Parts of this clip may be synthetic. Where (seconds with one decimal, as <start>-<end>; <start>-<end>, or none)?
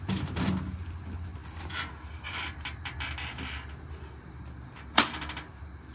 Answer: none